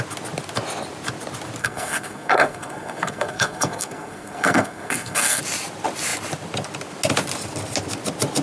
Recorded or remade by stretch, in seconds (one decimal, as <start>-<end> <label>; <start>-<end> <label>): 0.0-1.6 recorded; 1.6-5.4 remade; 5.4-8.4 recorded